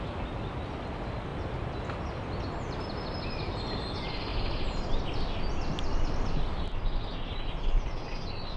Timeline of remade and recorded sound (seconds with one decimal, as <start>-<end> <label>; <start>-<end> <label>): 0.0-1.3 recorded; 1.3-3.8 remade; 3.8-8.6 recorded